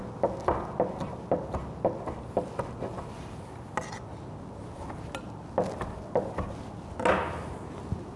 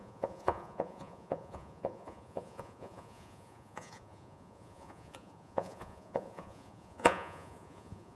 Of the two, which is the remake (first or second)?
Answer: second